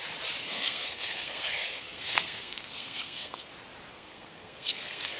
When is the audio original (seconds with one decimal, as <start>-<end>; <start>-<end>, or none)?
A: 0.0-0.4; 3.5-3.9